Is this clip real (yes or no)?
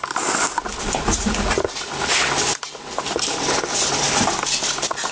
yes